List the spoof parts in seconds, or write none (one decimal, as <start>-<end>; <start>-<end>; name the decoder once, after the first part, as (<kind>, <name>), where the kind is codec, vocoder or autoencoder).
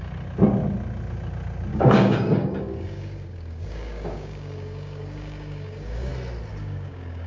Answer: 1.7-6.1 (codec, DAC); 6.5-7.3